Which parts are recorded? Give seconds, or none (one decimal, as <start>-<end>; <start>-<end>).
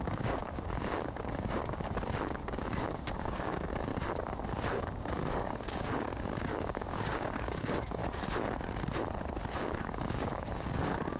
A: 3.9-4.8; 8.0-9.5